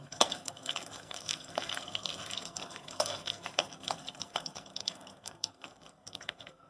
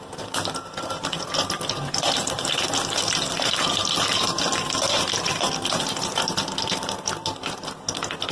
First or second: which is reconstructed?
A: first